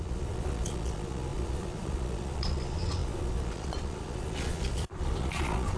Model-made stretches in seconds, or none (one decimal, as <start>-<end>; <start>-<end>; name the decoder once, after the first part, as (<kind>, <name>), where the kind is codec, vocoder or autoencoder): 0.0-5.8 (vocoder, Vocos)